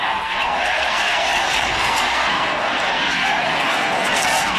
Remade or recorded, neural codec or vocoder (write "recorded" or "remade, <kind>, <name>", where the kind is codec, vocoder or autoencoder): remade, codec, SNAC